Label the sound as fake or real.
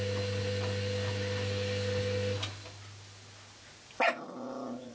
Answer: real